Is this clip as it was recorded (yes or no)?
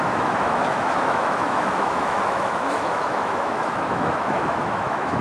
no